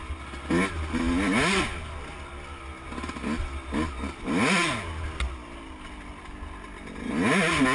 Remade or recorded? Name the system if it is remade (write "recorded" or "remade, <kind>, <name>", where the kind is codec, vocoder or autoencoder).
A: recorded